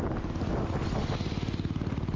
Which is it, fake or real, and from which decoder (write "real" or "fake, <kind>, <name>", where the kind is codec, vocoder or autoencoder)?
real